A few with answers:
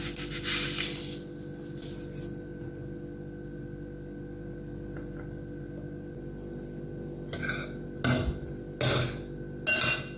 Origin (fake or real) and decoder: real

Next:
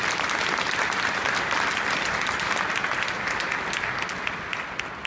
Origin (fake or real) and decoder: real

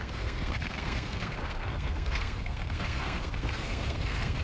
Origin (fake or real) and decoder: fake, codec, SNAC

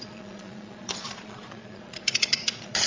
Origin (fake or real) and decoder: fake, vocoder, Vocos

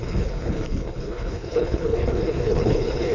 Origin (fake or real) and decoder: fake, codec, HILCodec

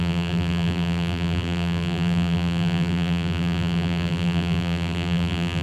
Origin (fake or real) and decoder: fake, vocoder, BigVGAN v2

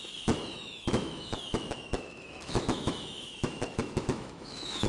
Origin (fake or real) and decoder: fake, autoencoder, DAC-VAE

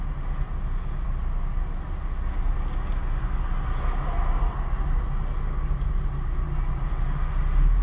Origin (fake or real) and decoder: real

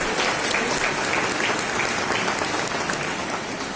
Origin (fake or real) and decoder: real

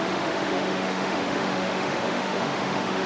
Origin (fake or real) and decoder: fake, autoencoder, DAC-VAE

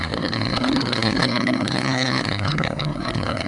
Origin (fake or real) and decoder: fake, codec, SNAC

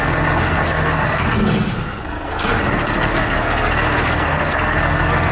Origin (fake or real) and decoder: fake, codec, SNAC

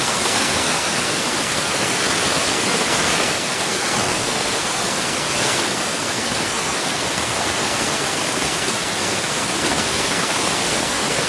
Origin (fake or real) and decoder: fake, codec, SNAC